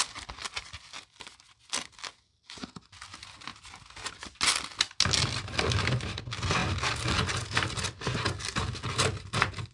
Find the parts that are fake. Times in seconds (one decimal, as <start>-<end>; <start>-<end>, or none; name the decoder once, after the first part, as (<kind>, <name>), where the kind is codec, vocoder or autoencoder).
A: none